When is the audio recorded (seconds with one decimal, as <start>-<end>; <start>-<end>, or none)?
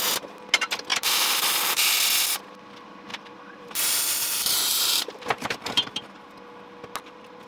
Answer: 0.0-0.9; 1.8-3.1; 6.0-7.5